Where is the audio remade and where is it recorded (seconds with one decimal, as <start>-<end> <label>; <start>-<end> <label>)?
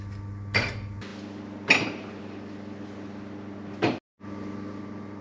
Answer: 0.0-5.2 recorded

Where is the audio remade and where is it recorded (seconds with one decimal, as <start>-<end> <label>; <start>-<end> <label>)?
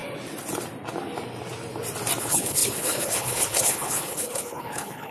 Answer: 0.0-2.2 recorded; 2.2-5.1 remade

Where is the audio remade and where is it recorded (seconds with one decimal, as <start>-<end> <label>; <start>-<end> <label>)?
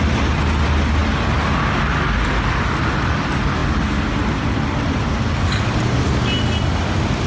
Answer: 0.0-7.3 recorded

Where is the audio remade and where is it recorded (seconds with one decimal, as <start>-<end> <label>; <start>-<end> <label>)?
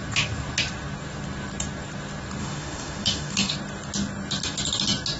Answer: 0.0-2.4 recorded; 2.4-3.5 remade; 3.5-5.2 recorded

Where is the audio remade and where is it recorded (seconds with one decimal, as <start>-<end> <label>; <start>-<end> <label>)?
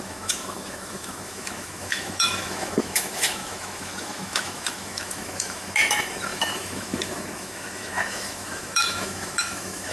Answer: 0.0-9.9 remade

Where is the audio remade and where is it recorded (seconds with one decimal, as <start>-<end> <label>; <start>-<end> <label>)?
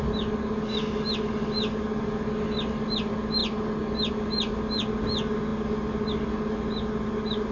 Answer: 0.0-7.5 recorded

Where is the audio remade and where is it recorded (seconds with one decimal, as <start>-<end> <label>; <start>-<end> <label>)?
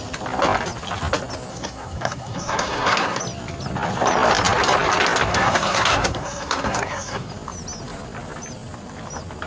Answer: 0.0-1.5 recorded; 1.5-3.2 remade; 3.2-5.3 recorded; 5.3-7.3 remade; 7.3-9.5 recorded